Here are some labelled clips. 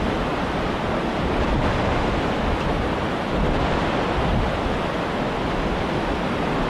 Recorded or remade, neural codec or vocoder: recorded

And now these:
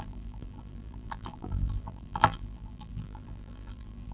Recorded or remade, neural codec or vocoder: remade, vocoder, BigVGAN v2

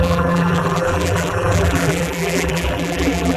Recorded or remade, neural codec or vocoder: remade, vocoder, BigVGAN v2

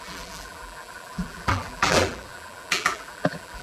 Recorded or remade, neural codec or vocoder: remade, vocoder, BigVGAN v2